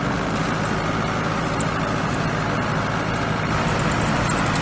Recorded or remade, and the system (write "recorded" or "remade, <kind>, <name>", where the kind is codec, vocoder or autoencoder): recorded